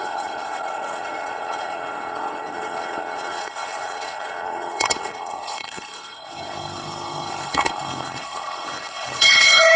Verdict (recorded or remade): remade